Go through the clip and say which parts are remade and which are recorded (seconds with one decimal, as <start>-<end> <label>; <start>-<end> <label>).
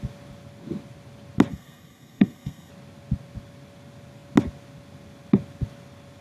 0.0-1.5 recorded; 1.5-2.7 remade; 2.7-6.2 recorded